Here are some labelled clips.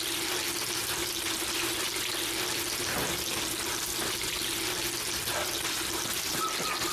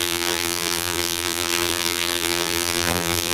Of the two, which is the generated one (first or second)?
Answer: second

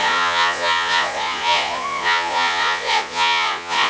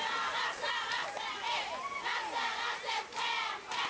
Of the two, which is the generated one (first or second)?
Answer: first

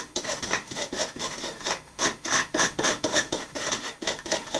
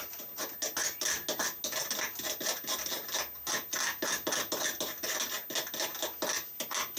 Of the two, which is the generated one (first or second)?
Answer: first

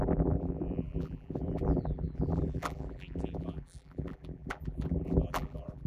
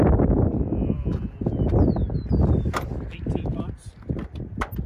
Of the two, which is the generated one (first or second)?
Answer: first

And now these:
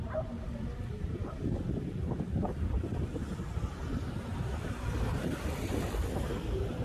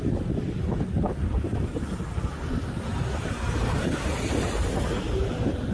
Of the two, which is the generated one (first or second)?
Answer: first